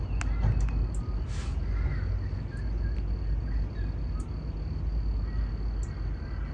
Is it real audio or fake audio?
real